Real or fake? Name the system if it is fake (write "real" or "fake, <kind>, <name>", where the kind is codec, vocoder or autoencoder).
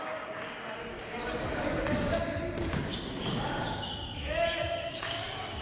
fake, codec, DAC